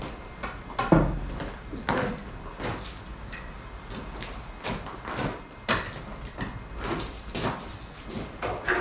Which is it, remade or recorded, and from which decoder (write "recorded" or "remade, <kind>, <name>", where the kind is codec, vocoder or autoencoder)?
recorded